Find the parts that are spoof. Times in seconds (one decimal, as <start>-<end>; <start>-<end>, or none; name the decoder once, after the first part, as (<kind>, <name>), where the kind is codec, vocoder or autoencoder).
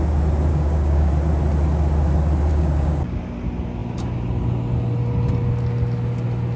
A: 0.5-1.1 (codec, DAC); 2.5-3.2